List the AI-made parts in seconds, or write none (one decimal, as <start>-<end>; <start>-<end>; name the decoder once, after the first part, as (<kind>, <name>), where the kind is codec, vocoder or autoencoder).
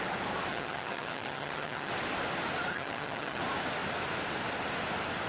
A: 0.5-1.9 (vocoder, HiFi-GAN); 2.7-3.4